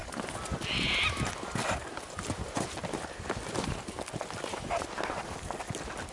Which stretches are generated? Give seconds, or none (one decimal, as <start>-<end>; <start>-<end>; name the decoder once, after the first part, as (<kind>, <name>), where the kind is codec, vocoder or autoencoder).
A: none